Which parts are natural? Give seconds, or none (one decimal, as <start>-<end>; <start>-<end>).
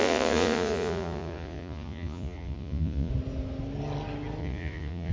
3.1-4.4